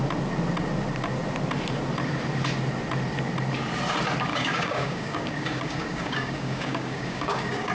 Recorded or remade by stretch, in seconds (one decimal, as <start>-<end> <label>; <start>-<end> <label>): 0.0-4.3 recorded; 4.3-7.7 remade